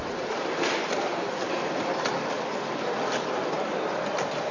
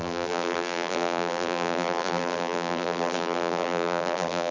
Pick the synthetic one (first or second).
second